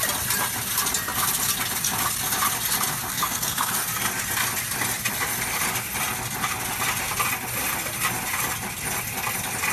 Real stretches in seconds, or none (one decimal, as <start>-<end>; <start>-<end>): 0.0-3.1; 3.7-9.7